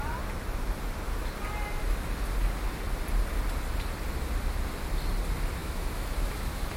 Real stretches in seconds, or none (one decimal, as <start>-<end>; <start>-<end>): 0.0-5.6